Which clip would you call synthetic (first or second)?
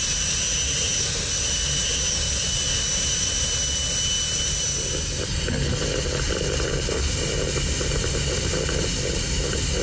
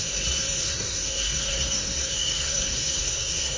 second